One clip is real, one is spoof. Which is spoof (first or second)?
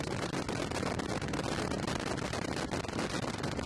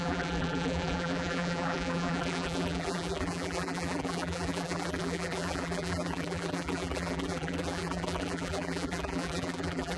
second